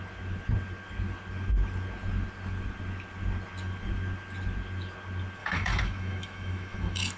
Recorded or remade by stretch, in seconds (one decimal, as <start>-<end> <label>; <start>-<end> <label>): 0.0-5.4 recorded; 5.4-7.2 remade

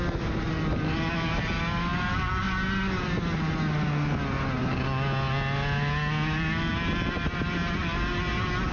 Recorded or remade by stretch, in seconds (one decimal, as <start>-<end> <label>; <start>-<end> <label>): 0.0-8.7 recorded

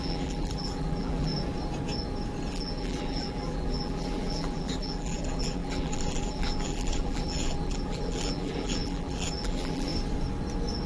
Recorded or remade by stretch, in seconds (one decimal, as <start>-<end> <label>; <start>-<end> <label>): 0.0-1.3 remade; 1.3-2.5 recorded; 2.5-9.9 remade; 9.9-10.9 recorded